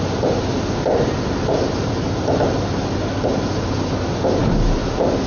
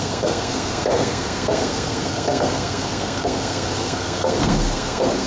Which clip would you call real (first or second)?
first